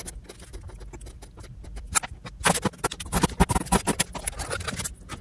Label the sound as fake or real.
real